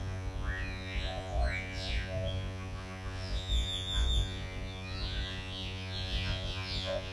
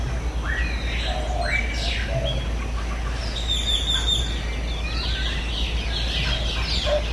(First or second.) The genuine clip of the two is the second